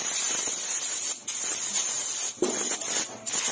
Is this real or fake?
real